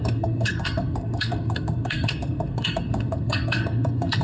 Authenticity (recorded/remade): remade